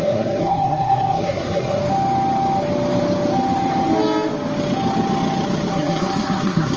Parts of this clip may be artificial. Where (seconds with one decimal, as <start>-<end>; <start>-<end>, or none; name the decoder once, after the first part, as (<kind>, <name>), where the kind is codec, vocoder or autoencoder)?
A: 0.0-1.8 (codec, SNAC); 5.7-6.8